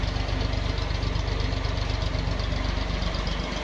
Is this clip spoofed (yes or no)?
no